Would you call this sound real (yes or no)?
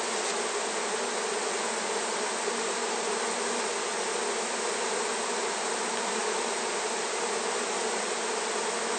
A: yes